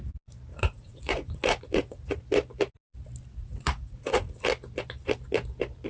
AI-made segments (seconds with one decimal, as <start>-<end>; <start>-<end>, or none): 0.5-2.2; 3.4-4.5